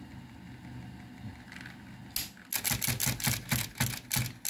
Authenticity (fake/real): real